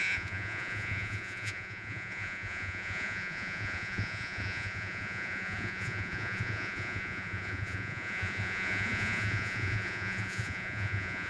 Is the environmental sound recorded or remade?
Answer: remade